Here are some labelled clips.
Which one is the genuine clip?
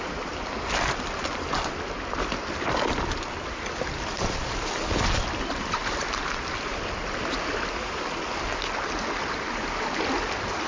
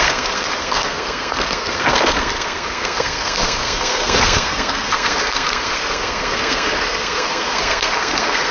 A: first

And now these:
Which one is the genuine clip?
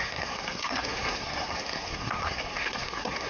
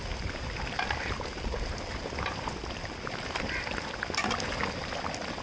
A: second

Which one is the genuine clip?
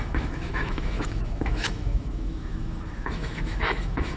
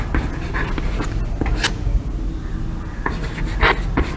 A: second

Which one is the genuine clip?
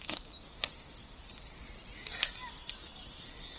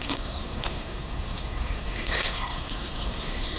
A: first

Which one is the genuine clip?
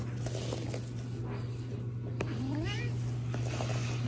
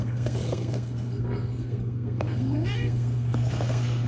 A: first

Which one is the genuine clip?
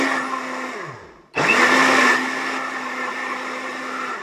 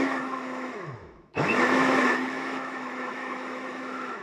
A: first